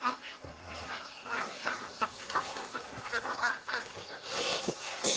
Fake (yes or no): yes